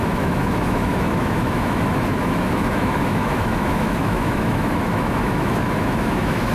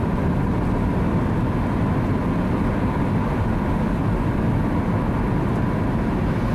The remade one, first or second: first